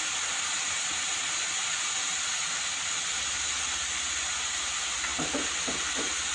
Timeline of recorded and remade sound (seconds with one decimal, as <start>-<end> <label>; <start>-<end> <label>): 0.0-6.3 recorded